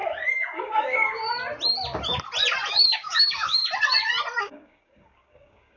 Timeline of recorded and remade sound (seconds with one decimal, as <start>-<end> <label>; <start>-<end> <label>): 0.0-1.2 remade; 1.2-2.7 recorded; 2.7-3.6 remade; 3.6-4.4 recorded; 4.4-5.8 remade